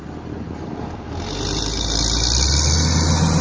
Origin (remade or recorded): recorded